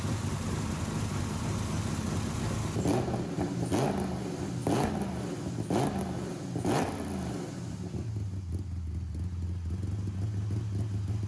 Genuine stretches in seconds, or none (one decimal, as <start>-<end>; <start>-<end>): 0.0-11.3